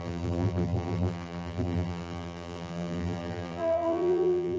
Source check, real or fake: fake